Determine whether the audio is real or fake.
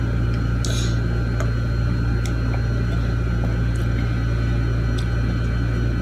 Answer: real